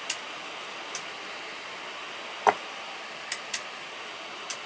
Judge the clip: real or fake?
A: real